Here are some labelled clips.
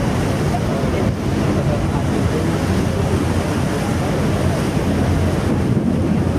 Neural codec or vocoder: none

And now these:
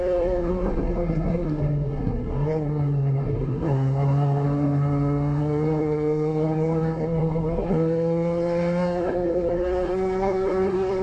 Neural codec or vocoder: codec, SNAC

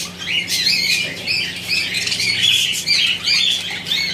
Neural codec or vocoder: none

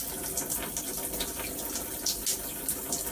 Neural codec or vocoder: none